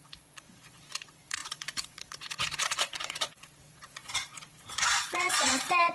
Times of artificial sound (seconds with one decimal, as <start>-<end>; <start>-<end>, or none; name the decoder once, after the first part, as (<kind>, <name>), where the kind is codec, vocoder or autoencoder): 0.0-5.9 (vocoder, Vocos)

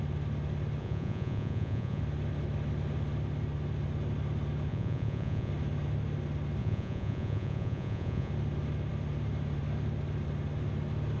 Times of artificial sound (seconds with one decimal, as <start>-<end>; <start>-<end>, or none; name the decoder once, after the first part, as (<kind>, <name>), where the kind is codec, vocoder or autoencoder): 0.8-2.0 (vocoder, Vocos); 4.7-5.5; 6.6-8.3

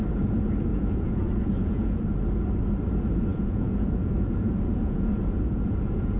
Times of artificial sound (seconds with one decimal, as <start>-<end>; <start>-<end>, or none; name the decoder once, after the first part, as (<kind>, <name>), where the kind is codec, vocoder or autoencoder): 0.7-2.0 (vocoder, Vocos); 3.3-6.2

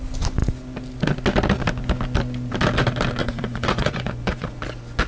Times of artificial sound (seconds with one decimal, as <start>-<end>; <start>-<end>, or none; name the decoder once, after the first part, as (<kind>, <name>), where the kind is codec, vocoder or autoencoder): 3.2-4.6 (vocoder, Vocos)

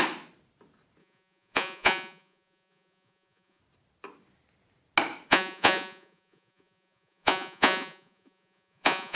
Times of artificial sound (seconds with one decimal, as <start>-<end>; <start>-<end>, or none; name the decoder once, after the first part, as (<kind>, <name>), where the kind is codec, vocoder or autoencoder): 1.0-3.6 (vocoder, Vocos); 5.3-9.2